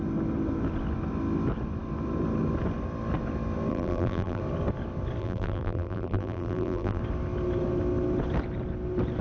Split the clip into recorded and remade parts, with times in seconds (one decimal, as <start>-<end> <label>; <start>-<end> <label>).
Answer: 0.0-3.7 recorded; 3.7-4.4 remade; 4.4-5.2 recorded; 5.2-7.0 remade; 7.0-9.2 recorded